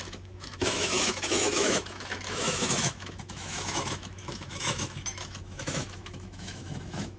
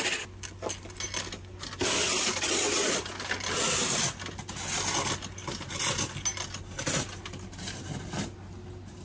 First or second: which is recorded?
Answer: second